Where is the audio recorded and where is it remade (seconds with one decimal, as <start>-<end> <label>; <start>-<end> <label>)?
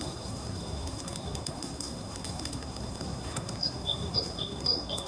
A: 0.0-5.1 remade